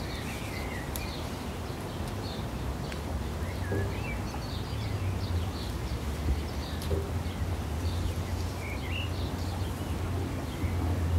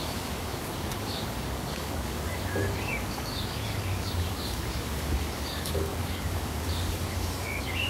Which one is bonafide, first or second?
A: first